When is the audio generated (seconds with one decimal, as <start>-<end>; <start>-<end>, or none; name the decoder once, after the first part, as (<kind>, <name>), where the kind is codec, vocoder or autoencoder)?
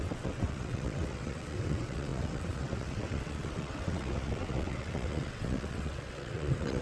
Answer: 0.0-6.8 (vocoder, WaveNeXt)